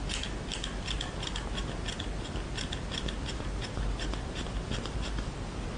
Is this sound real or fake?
real